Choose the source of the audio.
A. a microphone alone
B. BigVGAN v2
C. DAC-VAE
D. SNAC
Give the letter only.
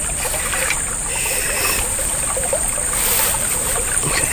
A